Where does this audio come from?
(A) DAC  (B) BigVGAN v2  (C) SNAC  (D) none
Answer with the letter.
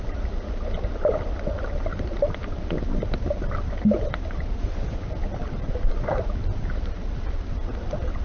D